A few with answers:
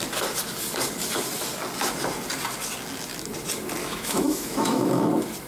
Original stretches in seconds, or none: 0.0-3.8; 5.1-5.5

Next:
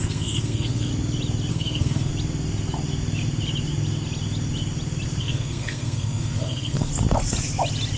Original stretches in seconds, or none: 0.9-1.5; 2.1-5.2; 6.9-8.0

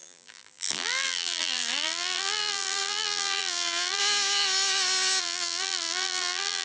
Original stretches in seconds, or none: 4.0-5.2

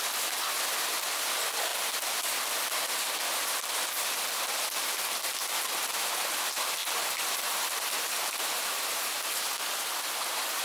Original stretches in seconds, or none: 0.0-6.8; 9.2-10.6

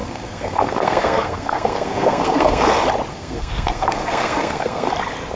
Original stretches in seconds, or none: 2.7-3.1; 4.9-5.4

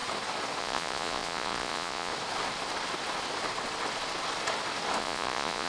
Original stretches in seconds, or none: 0.0-0.6; 2.1-5.0

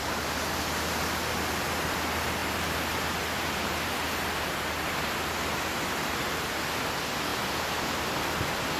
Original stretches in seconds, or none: 0.0-8.8

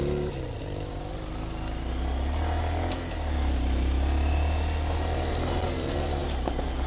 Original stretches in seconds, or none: 0.0-6.9